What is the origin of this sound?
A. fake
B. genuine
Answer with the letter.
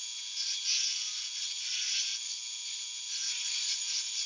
B